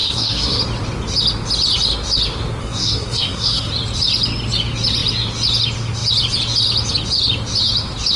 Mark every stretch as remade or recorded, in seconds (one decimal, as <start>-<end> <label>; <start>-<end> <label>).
0.0-0.6 remade; 0.6-2.6 recorded; 2.6-3.7 remade; 3.7-8.2 recorded